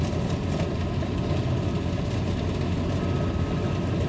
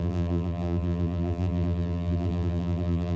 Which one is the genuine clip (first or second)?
first